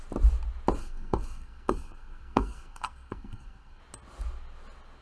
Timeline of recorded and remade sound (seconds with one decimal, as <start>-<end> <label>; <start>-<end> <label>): 0.0-0.8 recorded; 0.8-3.8 remade; 3.8-5.0 recorded